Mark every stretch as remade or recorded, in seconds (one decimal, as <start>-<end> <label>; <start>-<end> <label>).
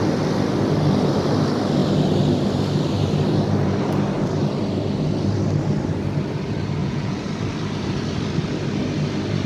0.0-6.8 recorded; 6.8-7.3 remade; 7.3-9.5 recorded